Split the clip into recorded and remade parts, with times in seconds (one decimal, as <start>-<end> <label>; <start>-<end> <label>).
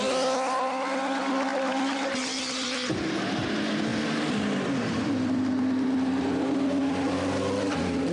0.0-1.5 recorded; 1.5-3.3 remade; 3.3-3.9 recorded; 3.9-5.3 remade; 5.3-8.1 recorded